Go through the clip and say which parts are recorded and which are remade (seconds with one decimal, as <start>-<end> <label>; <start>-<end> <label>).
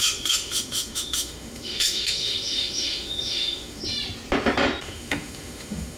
0.0-3.8 remade; 3.8-4.8 recorded; 4.8-6.0 remade